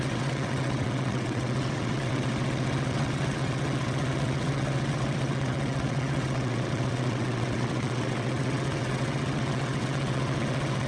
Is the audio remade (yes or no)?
yes